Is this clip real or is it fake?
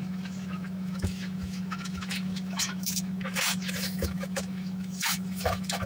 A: fake